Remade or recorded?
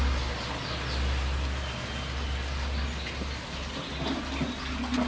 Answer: recorded